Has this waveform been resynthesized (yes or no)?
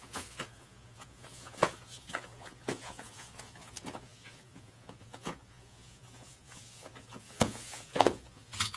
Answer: yes